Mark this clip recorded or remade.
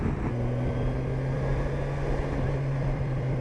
remade